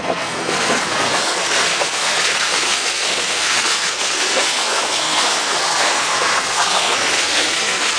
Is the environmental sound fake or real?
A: fake